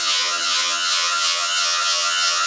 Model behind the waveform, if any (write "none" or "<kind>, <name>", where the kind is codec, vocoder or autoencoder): vocoder, HiFi-GAN